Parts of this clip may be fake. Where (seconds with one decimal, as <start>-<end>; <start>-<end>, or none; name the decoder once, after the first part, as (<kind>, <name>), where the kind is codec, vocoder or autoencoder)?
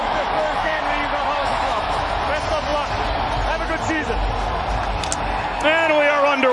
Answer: 0.0-0.8 (autoencoder, DAC-VAE); 1.4-2.1